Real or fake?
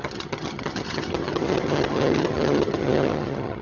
fake